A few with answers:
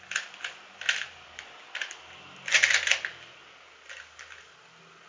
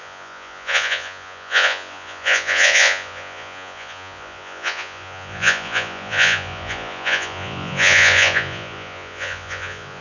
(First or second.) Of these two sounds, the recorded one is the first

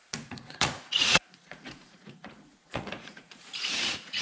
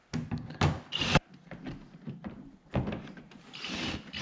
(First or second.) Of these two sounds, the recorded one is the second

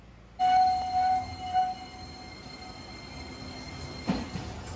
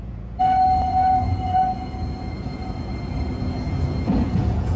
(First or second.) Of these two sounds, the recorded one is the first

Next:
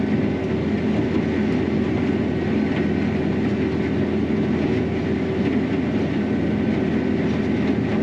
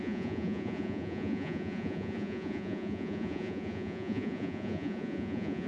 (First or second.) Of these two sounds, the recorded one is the first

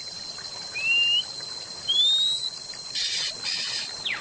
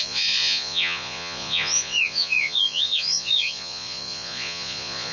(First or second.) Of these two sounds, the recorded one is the first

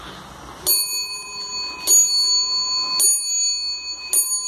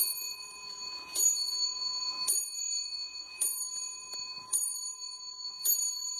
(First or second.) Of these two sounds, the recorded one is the first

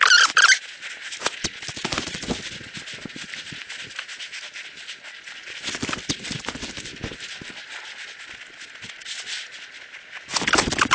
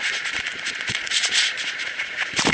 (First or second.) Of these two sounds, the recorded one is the first